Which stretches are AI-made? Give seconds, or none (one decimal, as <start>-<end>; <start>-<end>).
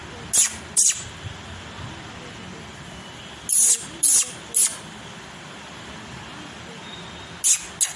none